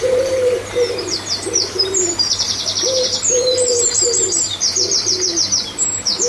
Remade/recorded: remade